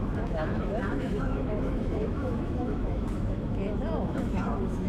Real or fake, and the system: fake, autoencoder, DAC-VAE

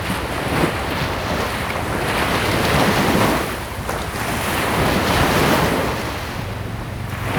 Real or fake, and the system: real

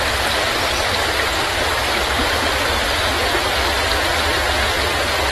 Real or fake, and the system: real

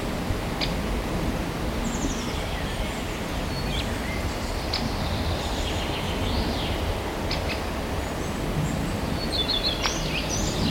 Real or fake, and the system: real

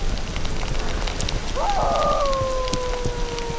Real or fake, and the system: real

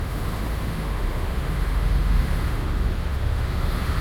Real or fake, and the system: fake, autoencoder, DAC-VAE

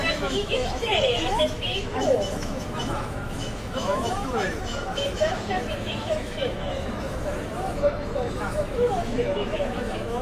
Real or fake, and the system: fake, autoencoder, DAC-VAE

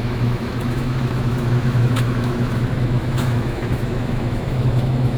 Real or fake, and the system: fake, autoencoder, DAC-VAE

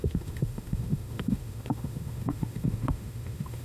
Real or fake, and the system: fake, autoencoder, DAC-VAE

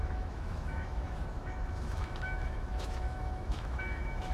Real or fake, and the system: fake, autoencoder, DAC-VAE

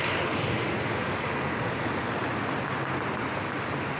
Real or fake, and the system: real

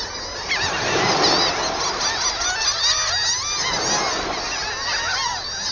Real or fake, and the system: real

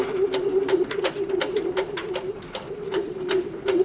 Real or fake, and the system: real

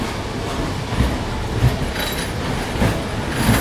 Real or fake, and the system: real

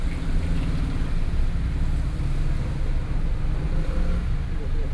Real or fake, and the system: real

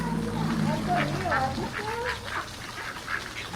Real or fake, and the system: real